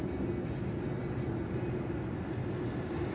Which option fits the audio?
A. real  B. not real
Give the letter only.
A